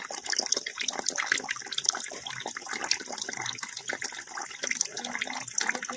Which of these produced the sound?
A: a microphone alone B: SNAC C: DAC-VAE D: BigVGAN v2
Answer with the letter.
A